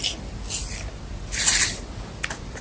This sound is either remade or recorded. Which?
recorded